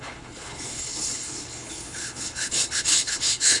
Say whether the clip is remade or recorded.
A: remade